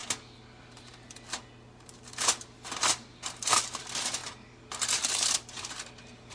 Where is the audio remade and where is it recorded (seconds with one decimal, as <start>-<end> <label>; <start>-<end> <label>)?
0.0-6.3 recorded